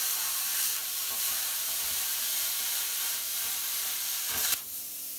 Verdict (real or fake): fake